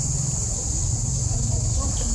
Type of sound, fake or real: real